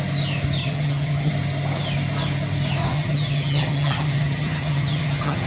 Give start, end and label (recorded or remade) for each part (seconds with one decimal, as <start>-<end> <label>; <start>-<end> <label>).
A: 0.0-0.6 recorded; 0.6-1.3 remade; 1.3-2.9 recorded; 2.9-5.5 remade